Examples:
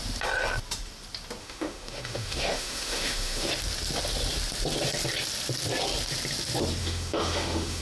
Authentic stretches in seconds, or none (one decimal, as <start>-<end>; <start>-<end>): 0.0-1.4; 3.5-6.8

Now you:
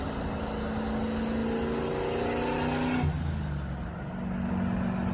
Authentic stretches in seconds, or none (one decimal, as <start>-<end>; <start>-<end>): 0.0-5.1

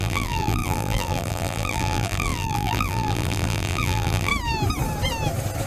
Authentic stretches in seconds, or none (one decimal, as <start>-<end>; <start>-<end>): 4.3-5.7

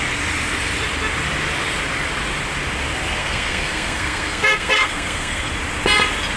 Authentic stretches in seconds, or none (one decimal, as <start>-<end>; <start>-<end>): 0.0-3.2; 5.5-6.4

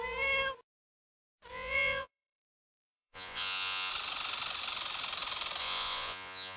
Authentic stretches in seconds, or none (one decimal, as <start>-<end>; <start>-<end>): 0.0-1.5; 3.9-5.6